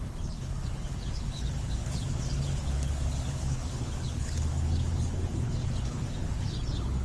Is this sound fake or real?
fake